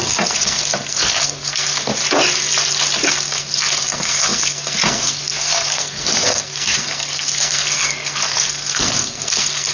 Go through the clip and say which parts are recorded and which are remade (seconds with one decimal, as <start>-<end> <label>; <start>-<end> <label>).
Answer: 0.0-1.9 remade; 1.9-3.1 recorded; 3.1-9.7 remade